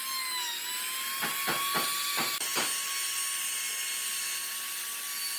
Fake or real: real